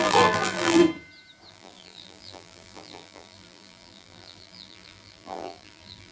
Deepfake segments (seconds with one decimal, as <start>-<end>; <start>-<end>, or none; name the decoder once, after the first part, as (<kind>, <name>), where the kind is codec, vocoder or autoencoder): 0.0-0.8 (vocoder, BigVGAN v2); 1.5-6.1